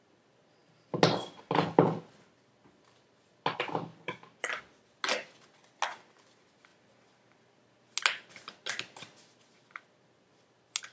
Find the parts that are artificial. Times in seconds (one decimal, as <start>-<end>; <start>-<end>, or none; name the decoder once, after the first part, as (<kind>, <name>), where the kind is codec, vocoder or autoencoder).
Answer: 3.9-4.6 (vocoder, BigVGAN v2)